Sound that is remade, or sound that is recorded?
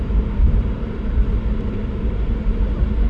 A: remade